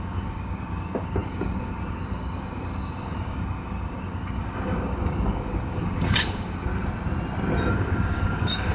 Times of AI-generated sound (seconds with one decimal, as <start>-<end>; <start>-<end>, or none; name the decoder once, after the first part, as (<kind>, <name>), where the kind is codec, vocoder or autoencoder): 0.0-6.7 (codec, DAC); 7.7-8.7